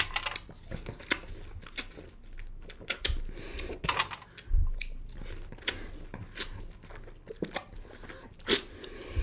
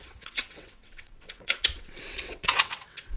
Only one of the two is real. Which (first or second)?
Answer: first